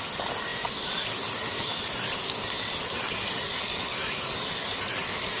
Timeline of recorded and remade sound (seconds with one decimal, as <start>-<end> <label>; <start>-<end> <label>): 0.0-5.4 recorded